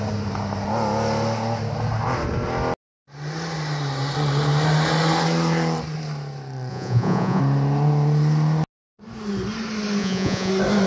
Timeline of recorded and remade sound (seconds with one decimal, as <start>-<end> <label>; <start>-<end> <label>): 0.0-6.7 recorded; 6.7-7.4 remade; 7.4-10.0 recorded; 10.0-10.5 remade; 10.5-10.9 recorded